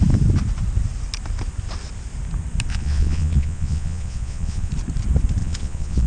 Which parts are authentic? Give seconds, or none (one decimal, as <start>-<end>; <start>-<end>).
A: 0.0-2.7; 4.7-5.4